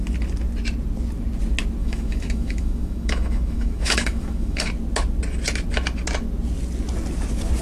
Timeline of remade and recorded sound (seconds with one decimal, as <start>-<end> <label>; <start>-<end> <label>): 0.0-1.8 recorded; 1.8-4.7 remade; 4.7-7.6 recorded